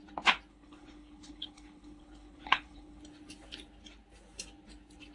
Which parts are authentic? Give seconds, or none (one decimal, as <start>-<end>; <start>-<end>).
0.0-0.5; 3.0-5.1